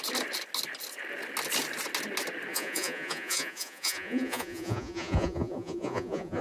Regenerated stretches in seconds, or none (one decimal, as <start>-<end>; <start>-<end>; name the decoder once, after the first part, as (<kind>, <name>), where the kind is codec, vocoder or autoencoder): 2.5-6.4 (vocoder, Vocos)